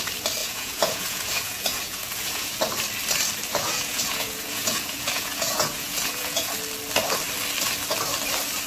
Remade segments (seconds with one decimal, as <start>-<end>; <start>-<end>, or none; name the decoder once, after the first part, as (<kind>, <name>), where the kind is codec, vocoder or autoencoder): 0.4-2.6 (vocoder, Vocos); 3.5-6.5

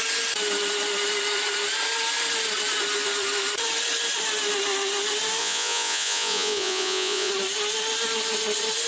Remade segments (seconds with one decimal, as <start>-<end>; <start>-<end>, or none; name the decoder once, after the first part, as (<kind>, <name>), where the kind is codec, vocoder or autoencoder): 5.4-7.3 (vocoder, Vocos)

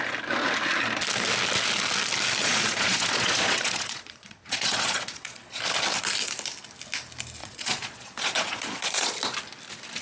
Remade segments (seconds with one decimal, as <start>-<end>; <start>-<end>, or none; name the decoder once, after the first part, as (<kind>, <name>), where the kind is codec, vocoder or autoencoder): 2.4-5.6 (vocoder, Vocos); 7.4-9.1

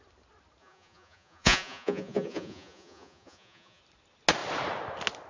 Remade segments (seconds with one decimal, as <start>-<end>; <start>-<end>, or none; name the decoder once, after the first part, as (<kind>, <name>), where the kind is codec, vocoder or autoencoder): 0.6-3.8 (vocoder, Vocos)

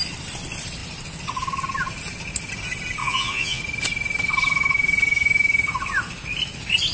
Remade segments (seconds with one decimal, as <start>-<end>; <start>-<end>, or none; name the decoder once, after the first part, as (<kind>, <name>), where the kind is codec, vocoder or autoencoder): 3.0-3.6 (vocoder, Vocos)